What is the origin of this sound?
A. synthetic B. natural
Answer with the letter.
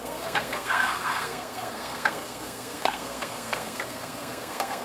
A